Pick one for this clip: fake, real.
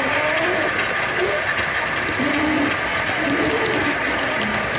real